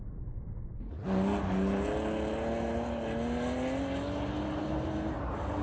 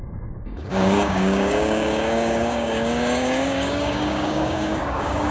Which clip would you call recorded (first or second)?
first